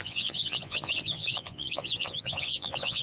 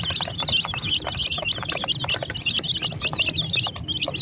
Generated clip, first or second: first